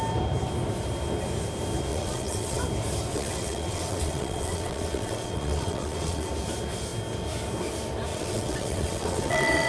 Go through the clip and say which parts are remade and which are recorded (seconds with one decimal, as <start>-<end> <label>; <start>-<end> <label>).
0.0-1.9 recorded; 1.9-2.6 remade; 2.6-3.1 recorded; 3.1-6.3 remade; 6.3-8.1 recorded; 8.1-9.7 remade